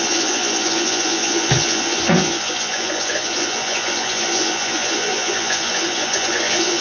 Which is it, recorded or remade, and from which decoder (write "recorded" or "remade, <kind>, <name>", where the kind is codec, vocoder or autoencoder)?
remade, vocoder, Vocos